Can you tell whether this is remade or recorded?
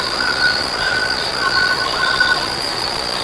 remade